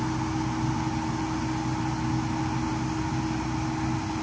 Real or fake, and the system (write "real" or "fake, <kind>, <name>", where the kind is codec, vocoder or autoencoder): real